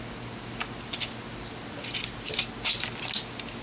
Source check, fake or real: real